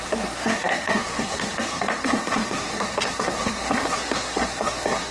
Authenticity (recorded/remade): remade